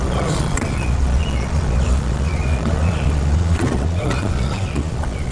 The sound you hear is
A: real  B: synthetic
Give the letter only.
B